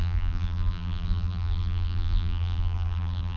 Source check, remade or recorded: remade